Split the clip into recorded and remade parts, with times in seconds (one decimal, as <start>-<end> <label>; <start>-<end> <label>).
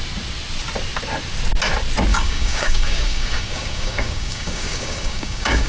0.0-2.1 recorded; 2.1-5.7 remade